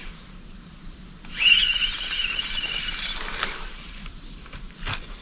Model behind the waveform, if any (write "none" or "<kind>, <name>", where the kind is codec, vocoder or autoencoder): none